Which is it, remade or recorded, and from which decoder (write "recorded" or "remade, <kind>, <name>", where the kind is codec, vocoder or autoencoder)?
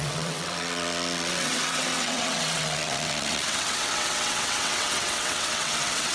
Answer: remade, vocoder, WaveNeXt